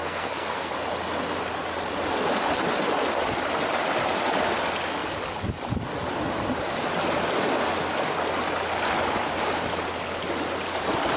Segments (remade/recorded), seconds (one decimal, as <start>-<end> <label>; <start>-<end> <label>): 0.0-0.7 remade; 0.7-11.2 recorded